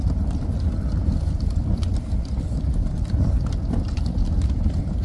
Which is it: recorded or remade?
recorded